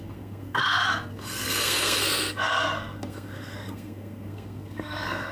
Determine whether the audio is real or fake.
fake